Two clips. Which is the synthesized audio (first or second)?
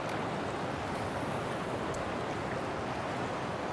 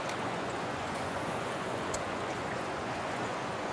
second